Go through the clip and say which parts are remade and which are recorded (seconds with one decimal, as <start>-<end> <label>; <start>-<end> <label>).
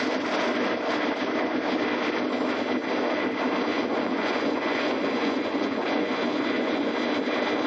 0.0-3.7 recorded; 3.7-6.9 remade; 6.9-7.7 recorded